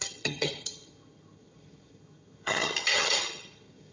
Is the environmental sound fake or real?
fake